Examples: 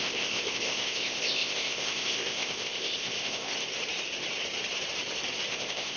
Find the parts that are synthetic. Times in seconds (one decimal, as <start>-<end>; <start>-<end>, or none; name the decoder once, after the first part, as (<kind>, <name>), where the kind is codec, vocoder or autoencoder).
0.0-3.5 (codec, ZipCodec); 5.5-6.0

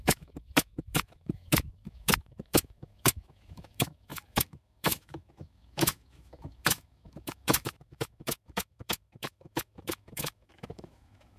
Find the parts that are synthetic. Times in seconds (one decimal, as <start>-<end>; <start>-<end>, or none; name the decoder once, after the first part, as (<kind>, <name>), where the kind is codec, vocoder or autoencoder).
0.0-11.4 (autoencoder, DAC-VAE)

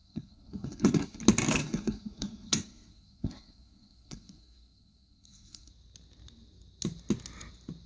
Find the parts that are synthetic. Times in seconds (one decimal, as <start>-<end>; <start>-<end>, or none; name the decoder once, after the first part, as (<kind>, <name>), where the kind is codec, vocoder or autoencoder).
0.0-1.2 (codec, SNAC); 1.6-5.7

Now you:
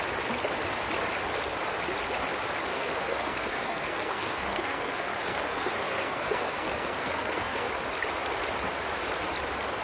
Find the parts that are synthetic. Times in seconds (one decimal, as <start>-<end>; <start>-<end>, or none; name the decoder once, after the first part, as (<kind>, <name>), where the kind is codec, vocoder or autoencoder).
2.7-7.7 (codec, SNAC)